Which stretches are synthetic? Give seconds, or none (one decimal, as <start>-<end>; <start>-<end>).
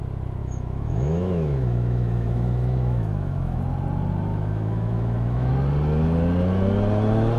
0.4-3.6; 4.3-5.5